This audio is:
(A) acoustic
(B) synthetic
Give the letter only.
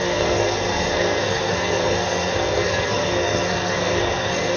B